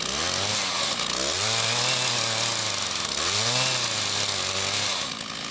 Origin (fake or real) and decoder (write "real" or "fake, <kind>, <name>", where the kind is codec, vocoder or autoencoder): real